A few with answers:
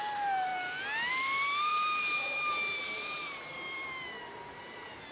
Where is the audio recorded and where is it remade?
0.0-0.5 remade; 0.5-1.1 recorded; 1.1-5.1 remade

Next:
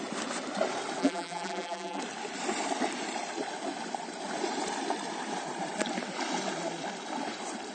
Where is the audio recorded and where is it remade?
0.0-1.0 recorded; 1.0-2.0 remade; 2.0-7.7 recorded

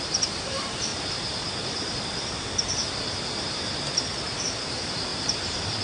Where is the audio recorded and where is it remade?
0.0-0.9 remade; 0.9-4.4 recorded; 4.4-5.8 remade

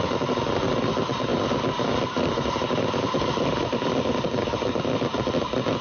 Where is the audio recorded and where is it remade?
0.0-1.3 recorded; 1.3-4.8 remade; 4.8-5.8 recorded

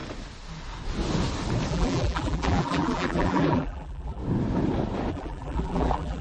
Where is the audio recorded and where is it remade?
0.0-1.7 recorded; 1.7-4.2 remade; 4.2-5.1 recorded; 5.1-6.2 remade

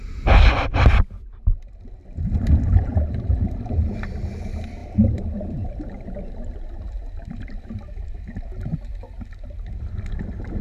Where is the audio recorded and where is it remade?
0.0-2.9 recorded; 2.9-3.9 remade; 3.9-4.8 recorded; 4.8-8.2 remade; 8.2-10.6 recorded

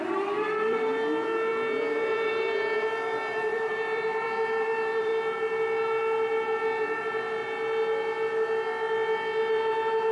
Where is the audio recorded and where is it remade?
0.0-5.1 remade; 5.1-6.8 recorded; 6.8-7.4 remade; 7.4-9.5 recorded; 9.5-10.1 remade

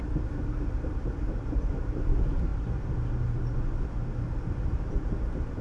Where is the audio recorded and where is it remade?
0.0-2.5 remade; 2.5-4.6 recorded; 4.6-5.6 remade